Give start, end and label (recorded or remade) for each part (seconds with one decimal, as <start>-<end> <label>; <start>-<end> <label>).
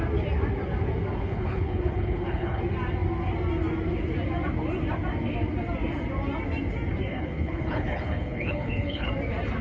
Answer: 0.0-1.1 recorded; 1.1-2.6 remade; 2.6-7.1 recorded; 7.1-9.1 remade; 9.1-9.6 recorded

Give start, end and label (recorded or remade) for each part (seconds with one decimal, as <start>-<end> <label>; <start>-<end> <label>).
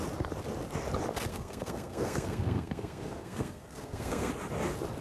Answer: 0.0-1.3 recorded; 1.3-4.3 remade; 4.3-5.0 recorded